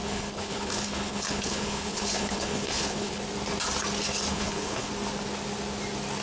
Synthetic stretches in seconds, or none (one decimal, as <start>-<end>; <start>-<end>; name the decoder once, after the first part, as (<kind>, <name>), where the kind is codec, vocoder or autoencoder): 0.0-3.2 (codec, HILCodec); 4.3-4.9